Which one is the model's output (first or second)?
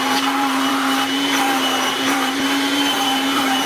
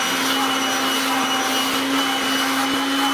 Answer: first